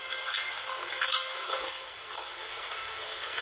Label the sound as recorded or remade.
remade